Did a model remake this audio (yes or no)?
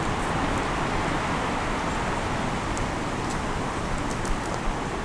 no